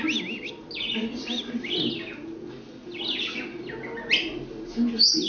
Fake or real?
real